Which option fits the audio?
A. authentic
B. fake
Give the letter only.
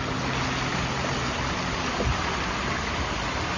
A